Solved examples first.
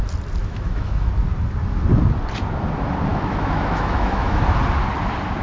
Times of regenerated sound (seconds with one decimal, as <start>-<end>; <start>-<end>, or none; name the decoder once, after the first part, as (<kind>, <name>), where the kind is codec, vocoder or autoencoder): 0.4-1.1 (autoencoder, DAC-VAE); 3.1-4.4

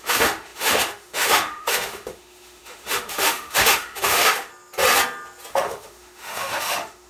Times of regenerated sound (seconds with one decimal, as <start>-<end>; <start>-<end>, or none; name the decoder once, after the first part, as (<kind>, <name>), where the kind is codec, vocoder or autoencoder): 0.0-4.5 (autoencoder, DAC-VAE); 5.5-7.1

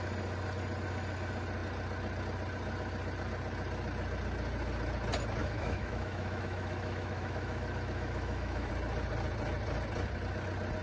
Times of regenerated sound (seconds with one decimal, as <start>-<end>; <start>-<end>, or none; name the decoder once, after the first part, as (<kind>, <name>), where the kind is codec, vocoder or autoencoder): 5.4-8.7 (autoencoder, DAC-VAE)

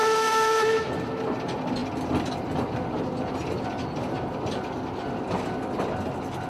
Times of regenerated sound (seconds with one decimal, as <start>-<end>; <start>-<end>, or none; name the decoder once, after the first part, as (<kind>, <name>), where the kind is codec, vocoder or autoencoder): 0.0-0.9 (autoencoder, DAC-VAE)